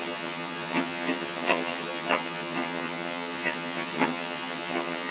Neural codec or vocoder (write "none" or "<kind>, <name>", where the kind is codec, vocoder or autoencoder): vocoder, HiFi-GAN